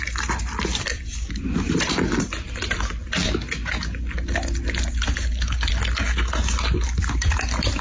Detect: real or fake real